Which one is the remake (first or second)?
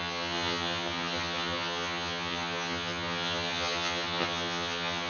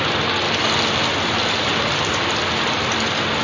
first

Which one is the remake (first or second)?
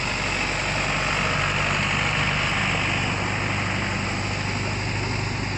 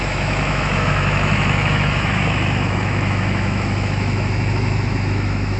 second